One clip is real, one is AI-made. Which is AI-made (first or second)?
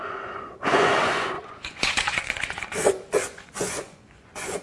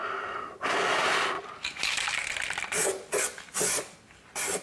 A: first